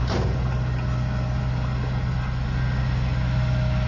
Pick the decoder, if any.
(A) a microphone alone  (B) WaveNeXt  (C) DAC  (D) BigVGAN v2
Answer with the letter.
A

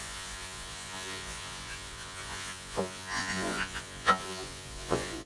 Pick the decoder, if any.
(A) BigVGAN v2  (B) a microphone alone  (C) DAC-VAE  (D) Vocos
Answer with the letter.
D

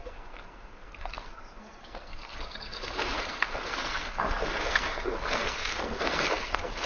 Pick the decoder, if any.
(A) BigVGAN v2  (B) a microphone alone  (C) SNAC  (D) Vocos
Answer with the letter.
C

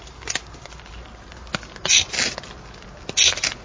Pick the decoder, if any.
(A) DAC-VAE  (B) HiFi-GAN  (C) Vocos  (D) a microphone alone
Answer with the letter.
D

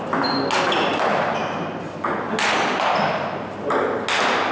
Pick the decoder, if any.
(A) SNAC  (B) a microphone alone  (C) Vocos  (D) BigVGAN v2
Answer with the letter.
B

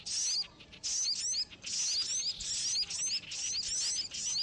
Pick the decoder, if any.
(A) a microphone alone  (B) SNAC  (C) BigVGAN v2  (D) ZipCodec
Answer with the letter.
A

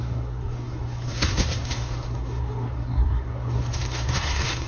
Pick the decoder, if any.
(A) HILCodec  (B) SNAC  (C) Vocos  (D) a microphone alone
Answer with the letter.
B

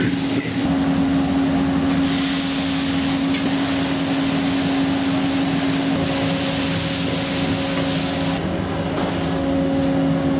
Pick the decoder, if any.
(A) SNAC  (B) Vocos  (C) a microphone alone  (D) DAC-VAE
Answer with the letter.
C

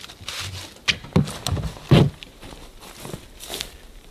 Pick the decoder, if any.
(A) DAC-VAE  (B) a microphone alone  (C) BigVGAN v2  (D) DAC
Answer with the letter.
B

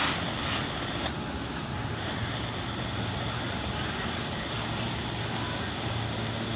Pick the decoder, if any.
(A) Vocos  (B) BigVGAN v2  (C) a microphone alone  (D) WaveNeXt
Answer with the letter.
C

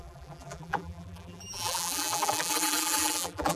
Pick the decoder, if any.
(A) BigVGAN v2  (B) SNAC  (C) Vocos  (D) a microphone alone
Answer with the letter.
A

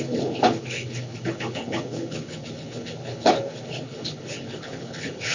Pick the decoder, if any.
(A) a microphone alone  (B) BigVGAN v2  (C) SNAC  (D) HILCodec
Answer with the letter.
D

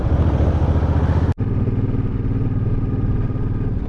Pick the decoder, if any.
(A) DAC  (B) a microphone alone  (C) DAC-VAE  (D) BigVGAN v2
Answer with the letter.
B